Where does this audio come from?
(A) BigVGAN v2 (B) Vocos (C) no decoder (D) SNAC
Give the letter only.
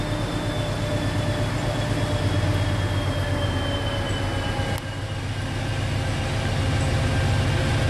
C